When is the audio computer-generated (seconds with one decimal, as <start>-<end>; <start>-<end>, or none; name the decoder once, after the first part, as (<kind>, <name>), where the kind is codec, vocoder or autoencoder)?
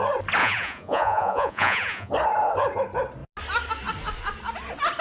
0.4-2.1 (vocoder, Vocos)